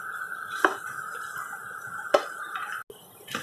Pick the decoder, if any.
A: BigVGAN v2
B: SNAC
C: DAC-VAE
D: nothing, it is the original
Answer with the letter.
D